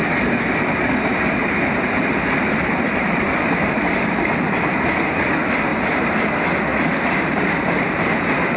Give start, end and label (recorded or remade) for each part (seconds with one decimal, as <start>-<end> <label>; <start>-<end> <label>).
0.0-1.4 recorded; 1.4-5.3 remade; 5.3-5.7 recorded; 5.7-6.3 remade; 6.3-6.7 recorded; 6.7-8.0 remade; 8.0-8.6 recorded